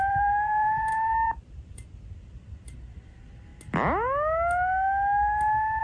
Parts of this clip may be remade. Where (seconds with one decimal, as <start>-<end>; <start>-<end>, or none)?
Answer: 0.0-3.5